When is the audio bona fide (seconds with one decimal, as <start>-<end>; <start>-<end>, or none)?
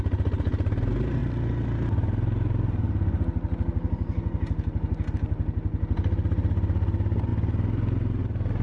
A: 0.0-8.6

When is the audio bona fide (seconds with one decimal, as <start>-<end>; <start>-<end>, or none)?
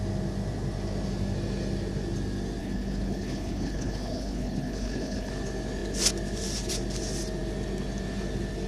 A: 0.0-2.6; 5.3-8.7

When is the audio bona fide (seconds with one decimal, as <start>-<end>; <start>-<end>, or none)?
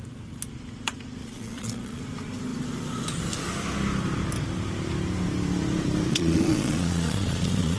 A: 0.0-1.2; 2.0-6.1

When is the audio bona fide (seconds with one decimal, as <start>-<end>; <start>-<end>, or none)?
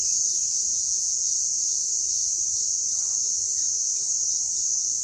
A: 0.0-0.7; 1.3-5.0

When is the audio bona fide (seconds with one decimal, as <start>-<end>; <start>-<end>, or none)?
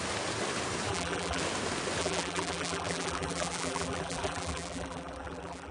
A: 0.0-0.9; 1.4-2.0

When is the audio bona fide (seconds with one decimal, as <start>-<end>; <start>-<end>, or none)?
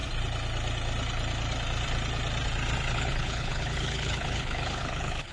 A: 0.0-2.9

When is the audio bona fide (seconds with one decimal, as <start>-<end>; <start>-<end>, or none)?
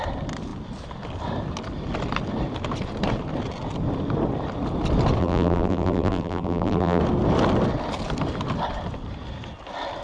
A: 0.0-5.2; 7.0-10.0